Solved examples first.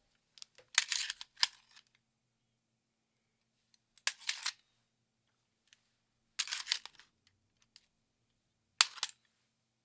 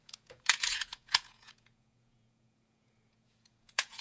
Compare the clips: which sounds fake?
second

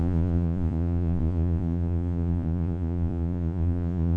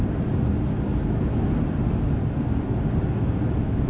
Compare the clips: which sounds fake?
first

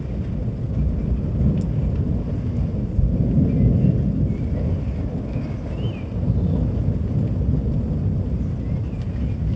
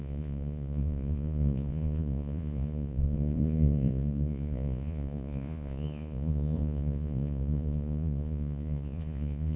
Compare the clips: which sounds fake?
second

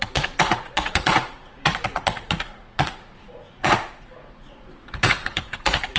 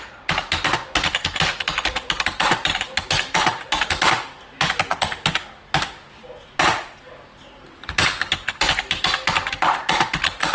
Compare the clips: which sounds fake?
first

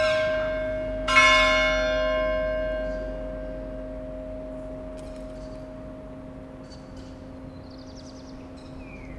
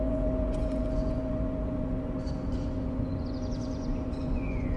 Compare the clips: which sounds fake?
second